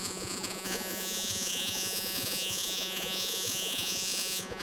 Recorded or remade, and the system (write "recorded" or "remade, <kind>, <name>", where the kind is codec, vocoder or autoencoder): remade, vocoder, Vocos